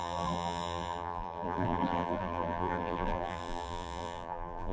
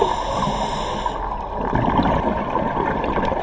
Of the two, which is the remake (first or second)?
first